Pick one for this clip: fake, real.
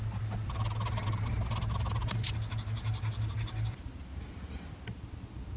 real